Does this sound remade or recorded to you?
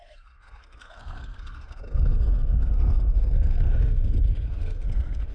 remade